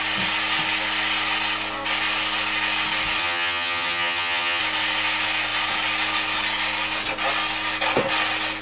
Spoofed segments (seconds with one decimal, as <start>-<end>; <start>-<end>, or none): 3.2-4.6